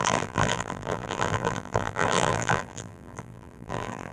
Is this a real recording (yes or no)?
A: no